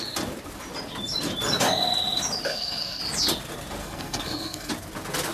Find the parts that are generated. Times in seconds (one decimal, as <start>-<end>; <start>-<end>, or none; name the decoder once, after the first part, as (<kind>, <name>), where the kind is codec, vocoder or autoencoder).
2.5-3.0 (codec, SNAC); 3.8-4.7